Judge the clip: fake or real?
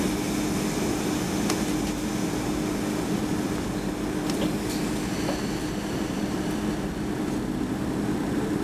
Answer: real